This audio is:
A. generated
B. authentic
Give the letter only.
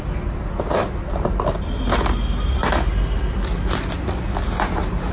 B